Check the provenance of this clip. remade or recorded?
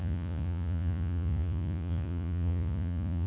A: remade